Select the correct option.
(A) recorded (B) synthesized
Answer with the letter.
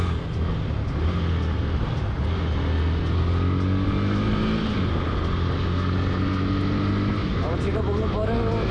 A